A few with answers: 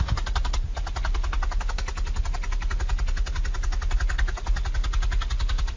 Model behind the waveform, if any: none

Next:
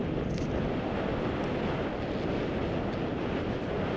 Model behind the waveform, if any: none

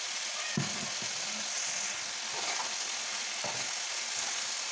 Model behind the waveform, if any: none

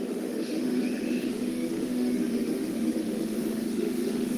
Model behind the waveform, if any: autoencoder, DAC-VAE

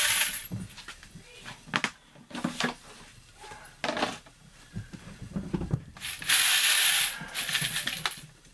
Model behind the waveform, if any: none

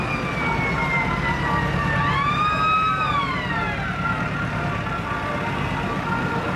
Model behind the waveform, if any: none